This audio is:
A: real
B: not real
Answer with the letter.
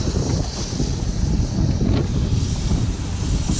A